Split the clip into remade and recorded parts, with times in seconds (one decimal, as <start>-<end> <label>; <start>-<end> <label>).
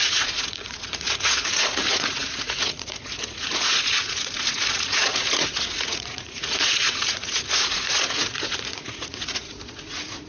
0.0-10.3 remade